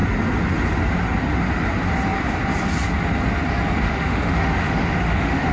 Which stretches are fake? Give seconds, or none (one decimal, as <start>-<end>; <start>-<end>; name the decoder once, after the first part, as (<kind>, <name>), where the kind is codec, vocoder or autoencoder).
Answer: 3.8-5.5 (autoencoder, DAC-VAE)